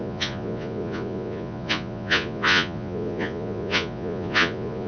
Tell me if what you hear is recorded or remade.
remade